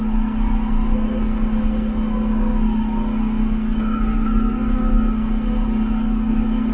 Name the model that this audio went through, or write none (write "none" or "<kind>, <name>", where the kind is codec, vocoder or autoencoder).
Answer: codec, SNAC